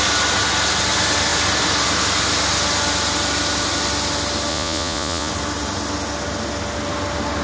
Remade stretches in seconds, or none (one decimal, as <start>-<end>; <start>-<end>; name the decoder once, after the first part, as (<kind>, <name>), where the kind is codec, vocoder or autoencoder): 4.5-5.3 (vocoder, Vocos)